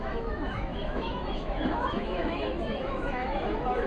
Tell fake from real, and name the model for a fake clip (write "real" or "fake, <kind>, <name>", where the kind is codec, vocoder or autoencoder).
fake, autoencoder, DAC-VAE